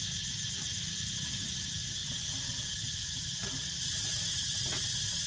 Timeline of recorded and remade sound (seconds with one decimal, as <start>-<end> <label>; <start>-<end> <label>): 0.0-5.3 recorded